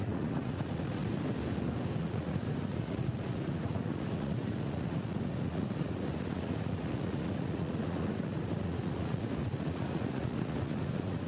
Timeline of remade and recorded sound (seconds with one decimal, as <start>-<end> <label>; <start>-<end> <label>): 0.0-1.0 remade; 1.0-2.0 recorded; 2.0-11.3 remade